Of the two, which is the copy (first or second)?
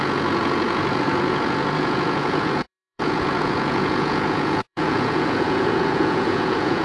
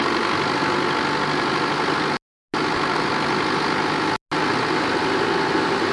first